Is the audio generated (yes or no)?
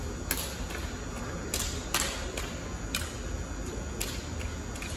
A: no